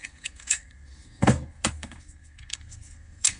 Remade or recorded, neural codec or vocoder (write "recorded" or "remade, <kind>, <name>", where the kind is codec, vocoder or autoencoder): remade, codec, SNAC